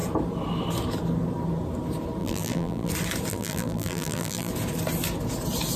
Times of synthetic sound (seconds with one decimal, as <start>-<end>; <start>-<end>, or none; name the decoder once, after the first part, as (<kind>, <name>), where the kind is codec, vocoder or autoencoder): 2.2-2.9 (vocoder, BigVGAN v2); 3.3-4.5